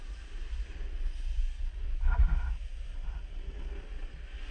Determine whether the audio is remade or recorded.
recorded